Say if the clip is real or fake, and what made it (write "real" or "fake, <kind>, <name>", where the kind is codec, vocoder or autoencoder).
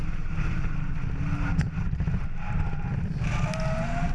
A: real